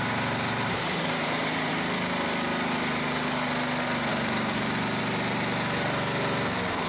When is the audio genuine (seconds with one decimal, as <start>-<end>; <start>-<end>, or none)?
1.7-4.1; 5.0-6.9